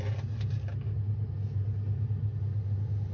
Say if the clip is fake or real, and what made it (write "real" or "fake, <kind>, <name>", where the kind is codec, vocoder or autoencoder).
real